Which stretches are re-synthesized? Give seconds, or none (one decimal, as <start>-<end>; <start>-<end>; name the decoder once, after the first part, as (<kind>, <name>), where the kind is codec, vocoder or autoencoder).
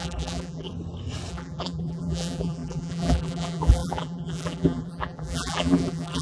0.0-0.7 (vocoder, BigVGAN v2); 1.3-6.2